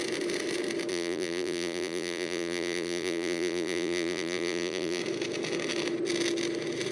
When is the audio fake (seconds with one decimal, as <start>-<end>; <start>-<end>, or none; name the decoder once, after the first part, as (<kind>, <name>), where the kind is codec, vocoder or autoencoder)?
0.9-5.0 (vocoder, BigVGAN v2)